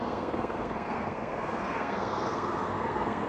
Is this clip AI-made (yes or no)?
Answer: yes